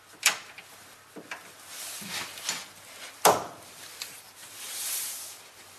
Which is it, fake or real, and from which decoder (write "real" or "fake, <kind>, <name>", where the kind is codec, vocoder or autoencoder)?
fake, vocoder, BigVGAN v2